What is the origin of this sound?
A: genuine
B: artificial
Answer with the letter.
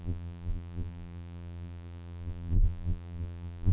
B